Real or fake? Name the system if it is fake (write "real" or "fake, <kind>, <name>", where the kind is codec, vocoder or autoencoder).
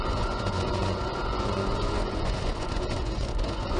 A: fake, vocoder, Vocos